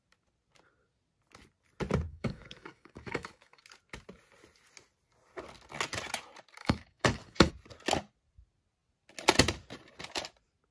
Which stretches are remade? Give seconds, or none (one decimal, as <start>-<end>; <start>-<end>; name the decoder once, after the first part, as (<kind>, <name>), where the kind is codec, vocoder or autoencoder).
2.1-3.6 (codec, DAC); 6.6-7.5